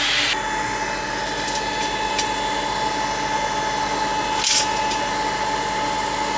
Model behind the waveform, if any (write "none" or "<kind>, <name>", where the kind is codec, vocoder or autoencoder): none